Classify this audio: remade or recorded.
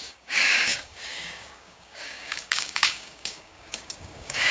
remade